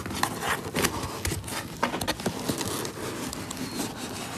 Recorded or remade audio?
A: recorded